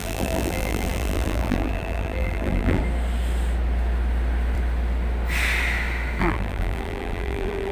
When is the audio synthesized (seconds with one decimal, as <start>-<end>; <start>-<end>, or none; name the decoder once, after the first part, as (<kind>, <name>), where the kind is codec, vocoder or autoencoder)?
0.0-2.8 (vocoder, BigVGAN v2); 6.2-7.7